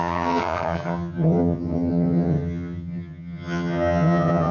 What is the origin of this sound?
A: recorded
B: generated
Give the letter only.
B